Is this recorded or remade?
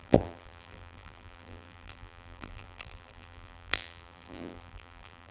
remade